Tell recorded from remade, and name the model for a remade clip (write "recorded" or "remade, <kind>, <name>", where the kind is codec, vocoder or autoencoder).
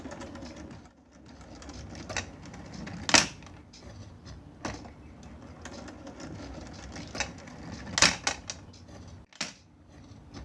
recorded